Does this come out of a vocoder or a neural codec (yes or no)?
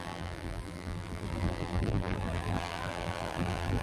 yes